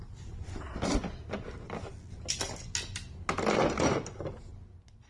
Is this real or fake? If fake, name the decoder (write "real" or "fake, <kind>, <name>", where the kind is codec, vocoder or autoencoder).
real